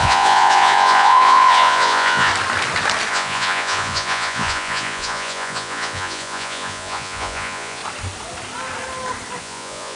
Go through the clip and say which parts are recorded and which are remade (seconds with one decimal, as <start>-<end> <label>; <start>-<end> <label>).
0.0-2.3 remade; 2.3-3.1 recorded; 3.1-7.8 remade; 7.8-9.4 recorded; 9.4-10.0 remade